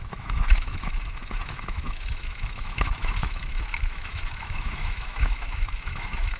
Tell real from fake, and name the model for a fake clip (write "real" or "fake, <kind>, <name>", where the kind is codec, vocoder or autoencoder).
fake, autoencoder, DAC-VAE